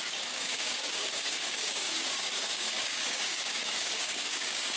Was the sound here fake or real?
fake